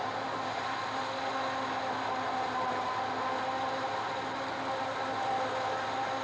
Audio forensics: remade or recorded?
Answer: recorded